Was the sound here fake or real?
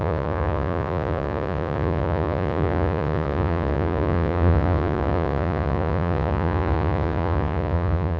fake